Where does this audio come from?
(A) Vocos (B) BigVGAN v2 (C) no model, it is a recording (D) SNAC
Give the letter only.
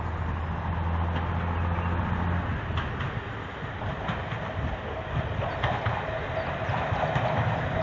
C